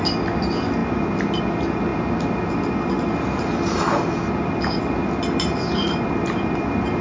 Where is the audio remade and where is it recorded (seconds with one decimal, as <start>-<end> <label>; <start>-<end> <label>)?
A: 0.0-7.0 recorded